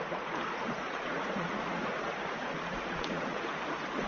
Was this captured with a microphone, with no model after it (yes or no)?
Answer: no